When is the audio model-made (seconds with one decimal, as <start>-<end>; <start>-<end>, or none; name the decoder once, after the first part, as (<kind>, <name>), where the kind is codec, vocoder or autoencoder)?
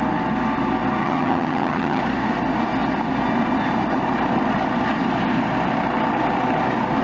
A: 1.0-2.0 (vocoder, HiFi-GAN)